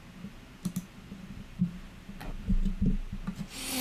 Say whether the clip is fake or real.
real